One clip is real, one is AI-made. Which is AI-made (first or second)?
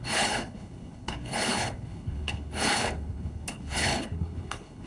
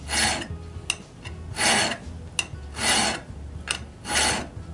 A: first